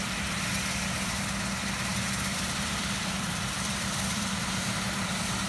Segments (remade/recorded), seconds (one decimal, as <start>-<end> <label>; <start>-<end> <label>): 0.0-1.9 recorded; 1.9-5.5 remade